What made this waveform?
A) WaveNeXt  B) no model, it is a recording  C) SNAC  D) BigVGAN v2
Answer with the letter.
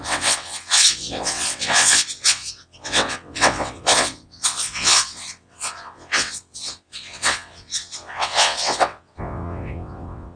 A